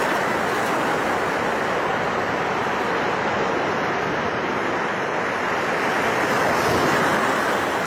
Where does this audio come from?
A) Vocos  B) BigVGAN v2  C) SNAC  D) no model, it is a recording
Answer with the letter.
D